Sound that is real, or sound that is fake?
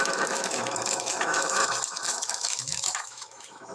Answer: fake